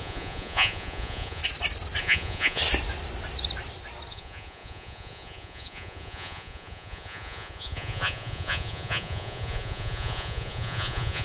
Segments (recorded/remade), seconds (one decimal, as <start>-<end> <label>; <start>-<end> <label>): 0.0-1.4 remade; 1.4-2.0 recorded; 2.0-2.6 remade; 2.6-4.1 recorded; 4.1-11.2 remade

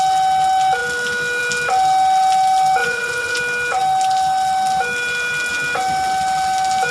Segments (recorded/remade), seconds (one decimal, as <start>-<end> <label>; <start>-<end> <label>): 0.0-2.8 recorded; 2.8-3.4 remade; 3.4-6.9 recorded